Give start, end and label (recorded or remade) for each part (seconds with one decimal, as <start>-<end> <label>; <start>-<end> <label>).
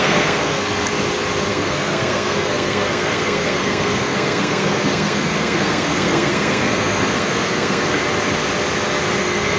0.0-0.9 remade; 0.9-1.5 recorded; 1.5-8.0 remade; 8.0-9.2 recorded; 9.2-9.6 remade